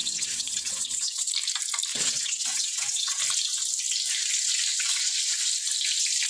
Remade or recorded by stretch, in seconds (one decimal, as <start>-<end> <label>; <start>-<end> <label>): 0.0-1.3 remade; 1.3-1.9 recorded; 1.9-3.2 remade; 3.2-4.7 recorded; 4.7-5.4 remade; 5.4-6.3 recorded